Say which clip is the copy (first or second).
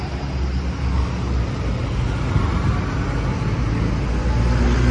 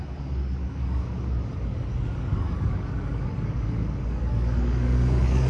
second